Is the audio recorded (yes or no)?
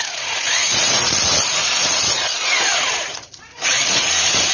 no